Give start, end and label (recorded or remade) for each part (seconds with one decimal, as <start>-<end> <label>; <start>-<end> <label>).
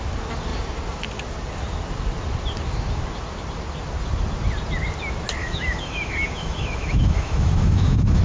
0.0-5.4 recorded; 5.4-8.2 remade